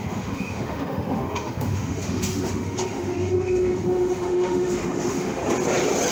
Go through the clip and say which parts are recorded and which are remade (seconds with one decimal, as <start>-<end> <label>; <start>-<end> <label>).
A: 0.0-5.4 remade; 5.4-6.1 recorded

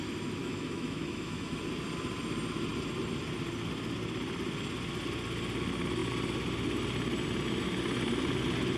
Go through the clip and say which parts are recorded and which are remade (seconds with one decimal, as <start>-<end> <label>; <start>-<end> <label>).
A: 0.0-0.4 recorded; 0.4-1.6 remade; 1.6-8.8 recorded

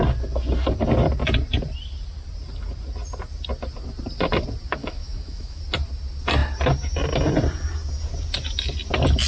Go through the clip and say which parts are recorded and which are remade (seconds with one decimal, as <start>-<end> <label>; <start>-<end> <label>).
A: 0.0-4.8 recorded; 4.8-5.6 remade; 5.6-9.3 recorded

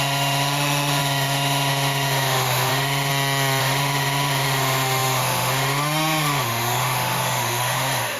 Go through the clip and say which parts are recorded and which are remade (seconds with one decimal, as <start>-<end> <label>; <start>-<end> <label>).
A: 0.0-3.1 remade; 3.1-3.6 recorded; 3.6-8.2 remade

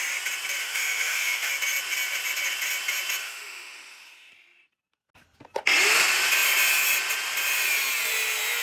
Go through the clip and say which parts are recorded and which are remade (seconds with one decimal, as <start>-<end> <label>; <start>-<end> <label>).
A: 0.0-0.6 recorded; 0.6-1.5 remade; 1.5-3.2 recorded; 3.2-4.3 remade; 4.3-8.6 recorded

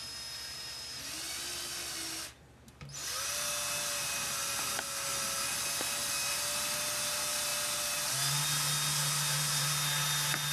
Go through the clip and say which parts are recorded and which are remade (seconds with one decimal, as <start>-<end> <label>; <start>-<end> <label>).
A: 0.0-10.5 recorded

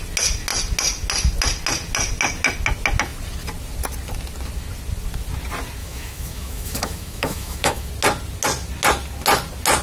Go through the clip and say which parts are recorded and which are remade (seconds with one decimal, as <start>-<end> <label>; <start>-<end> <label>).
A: 0.0-5.8 recorded; 5.8-7.9 remade; 7.9-9.8 recorded

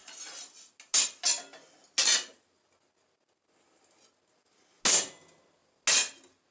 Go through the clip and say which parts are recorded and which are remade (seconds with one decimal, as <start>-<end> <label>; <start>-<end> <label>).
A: 0.0-6.5 recorded